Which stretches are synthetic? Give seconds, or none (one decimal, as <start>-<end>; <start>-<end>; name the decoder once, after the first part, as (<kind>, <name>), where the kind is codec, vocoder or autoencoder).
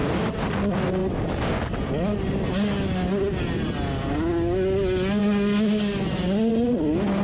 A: 0.0-0.5 (vocoder, BigVGAN v2)